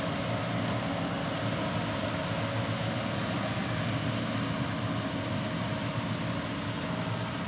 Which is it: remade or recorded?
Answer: recorded